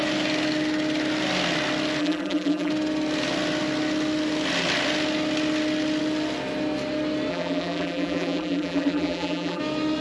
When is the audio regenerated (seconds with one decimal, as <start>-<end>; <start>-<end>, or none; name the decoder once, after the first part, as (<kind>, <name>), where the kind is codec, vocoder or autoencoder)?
2.0-2.7 (vocoder, BigVGAN v2); 7.3-9.6